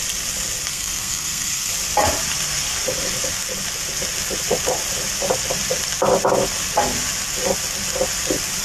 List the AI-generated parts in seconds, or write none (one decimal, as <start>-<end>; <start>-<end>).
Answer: 0.7-1.7

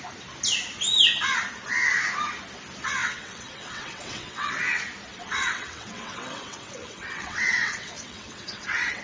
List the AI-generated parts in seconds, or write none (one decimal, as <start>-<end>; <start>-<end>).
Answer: 3.0-4.5; 5.1-9.0

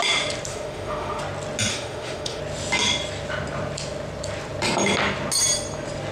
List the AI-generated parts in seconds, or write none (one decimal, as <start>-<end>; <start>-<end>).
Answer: 0.5-1.2; 1.7-2.4

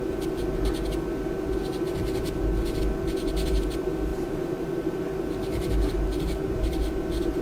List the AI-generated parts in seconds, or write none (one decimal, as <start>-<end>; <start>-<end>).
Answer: 4.1-6.9

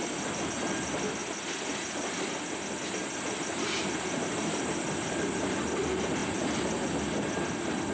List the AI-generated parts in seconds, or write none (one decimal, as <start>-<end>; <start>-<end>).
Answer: none